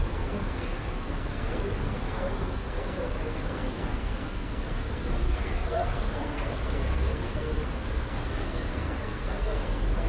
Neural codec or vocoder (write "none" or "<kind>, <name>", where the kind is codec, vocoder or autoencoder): codec, SNAC